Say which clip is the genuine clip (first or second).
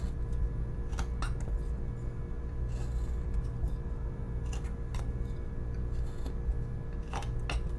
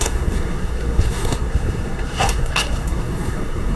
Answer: first